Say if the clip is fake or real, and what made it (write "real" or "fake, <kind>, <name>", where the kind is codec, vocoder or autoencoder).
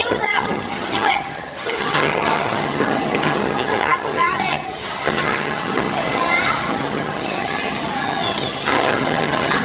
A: fake, vocoder, HiFi-GAN